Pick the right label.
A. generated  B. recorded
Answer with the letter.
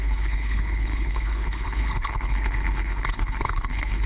A